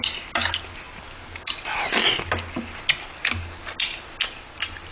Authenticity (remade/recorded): recorded